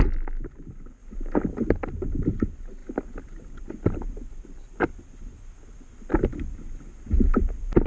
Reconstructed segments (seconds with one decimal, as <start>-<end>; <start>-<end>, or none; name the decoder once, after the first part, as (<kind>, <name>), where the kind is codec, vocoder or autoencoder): none